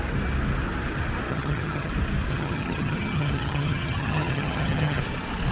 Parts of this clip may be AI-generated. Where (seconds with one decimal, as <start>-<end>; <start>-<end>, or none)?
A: 1.3-1.9; 2.3-5.0

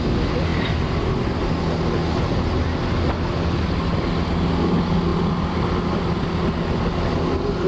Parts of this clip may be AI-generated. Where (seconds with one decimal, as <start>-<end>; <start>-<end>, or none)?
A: none

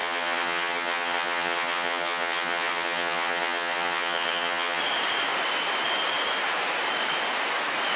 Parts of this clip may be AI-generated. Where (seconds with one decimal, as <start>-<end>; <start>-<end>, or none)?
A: 0.0-4.8

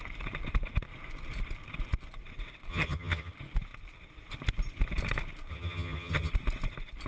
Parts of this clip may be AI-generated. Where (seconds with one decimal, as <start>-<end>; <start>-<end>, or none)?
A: 2.7-3.3; 5.5-6.3